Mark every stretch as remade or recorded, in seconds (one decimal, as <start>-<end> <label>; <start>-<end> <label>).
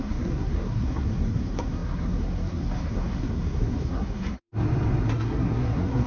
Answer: 0.0-4.5 remade; 4.5-5.1 recorded; 5.1-6.1 remade